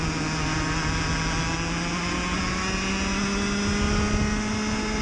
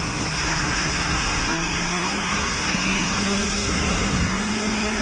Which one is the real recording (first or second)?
first